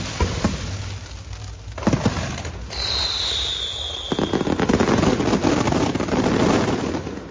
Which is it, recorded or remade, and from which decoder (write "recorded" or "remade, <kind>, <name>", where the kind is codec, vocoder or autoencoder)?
recorded